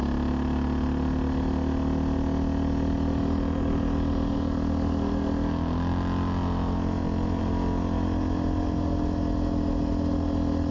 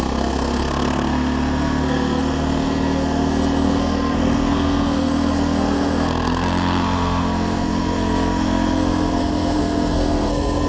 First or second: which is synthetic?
second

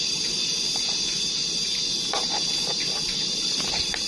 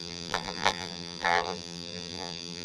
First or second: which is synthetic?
second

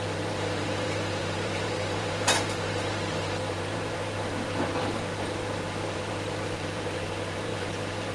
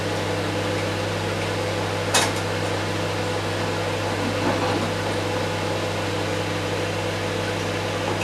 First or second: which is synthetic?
first